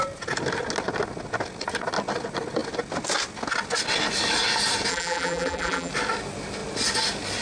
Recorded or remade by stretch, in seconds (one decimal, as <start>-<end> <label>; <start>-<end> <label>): 0.0-4.9 recorded; 4.9-5.9 remade; 5.9-7.4 recorded